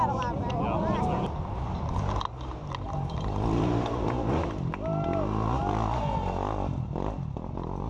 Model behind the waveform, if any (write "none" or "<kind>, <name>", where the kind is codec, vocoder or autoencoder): none